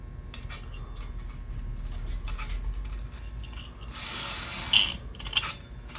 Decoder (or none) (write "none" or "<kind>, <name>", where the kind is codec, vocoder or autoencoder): none